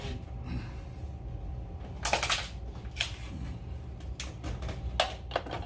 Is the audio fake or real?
real